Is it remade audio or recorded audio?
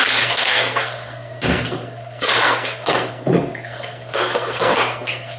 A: remade